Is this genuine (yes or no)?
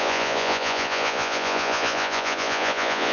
no